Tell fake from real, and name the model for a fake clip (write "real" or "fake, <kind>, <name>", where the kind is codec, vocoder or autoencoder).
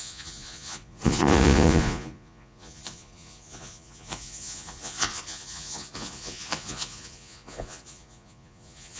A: fake, vocoder, Vocos